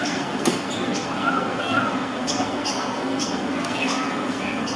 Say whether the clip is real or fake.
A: fake